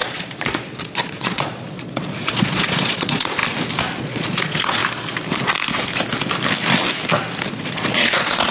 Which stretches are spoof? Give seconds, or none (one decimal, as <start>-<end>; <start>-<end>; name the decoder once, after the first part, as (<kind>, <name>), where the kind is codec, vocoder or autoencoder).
0.0-3.4 (vocoder, Vocos); 4.0-4.8; 7.5-8.5